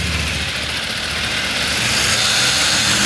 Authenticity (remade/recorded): recorded